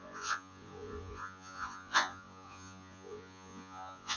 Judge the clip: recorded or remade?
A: remade